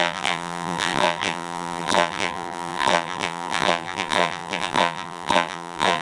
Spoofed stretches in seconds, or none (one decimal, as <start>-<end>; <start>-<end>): 0.0-6.0